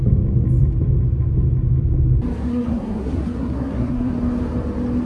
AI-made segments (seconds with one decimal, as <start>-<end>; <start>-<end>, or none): 2.4-4.1